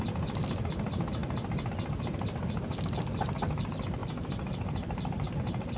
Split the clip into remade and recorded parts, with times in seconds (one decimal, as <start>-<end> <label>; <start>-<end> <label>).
0.0-4.0 recorded; 4.0-5.3 remade; 5.3-5.8 recorded